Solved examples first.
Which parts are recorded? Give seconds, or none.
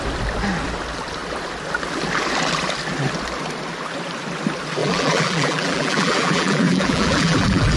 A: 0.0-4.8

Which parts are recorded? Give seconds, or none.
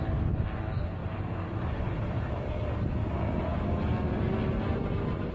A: 0.0-1.0; 2.5-5.3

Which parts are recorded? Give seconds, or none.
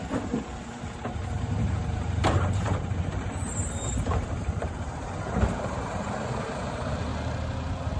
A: 7.1-8.0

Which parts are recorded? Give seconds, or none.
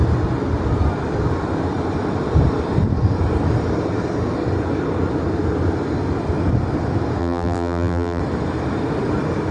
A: 0.0-7.2; 8.2-9.5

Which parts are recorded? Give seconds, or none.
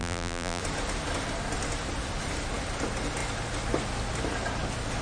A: 0.6-5.0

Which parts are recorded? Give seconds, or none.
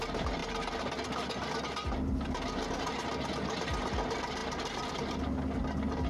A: 0.0-6.1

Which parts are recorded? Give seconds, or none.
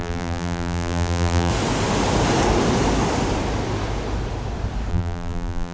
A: 1.5-4.9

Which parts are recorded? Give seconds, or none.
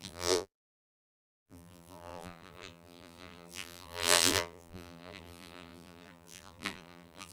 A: none